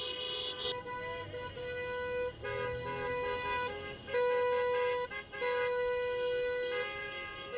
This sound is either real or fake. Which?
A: real